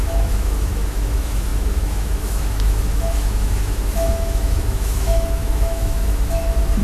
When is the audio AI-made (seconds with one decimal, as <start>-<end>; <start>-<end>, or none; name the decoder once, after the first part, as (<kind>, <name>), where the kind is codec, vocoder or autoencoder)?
0.0-6.8 (autoencoder, DAC-VAE)